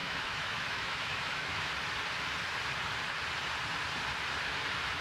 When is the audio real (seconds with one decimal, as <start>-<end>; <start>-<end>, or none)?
1.7-5.0